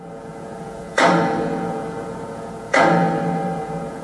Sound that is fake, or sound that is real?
fake